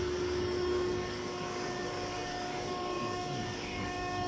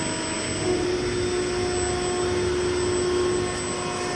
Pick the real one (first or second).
second